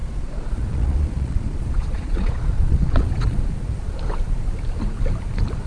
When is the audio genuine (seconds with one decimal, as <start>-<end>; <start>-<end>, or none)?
3.4-5.7